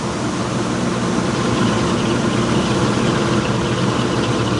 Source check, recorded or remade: recorded